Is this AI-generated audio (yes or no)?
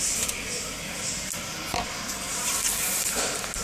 no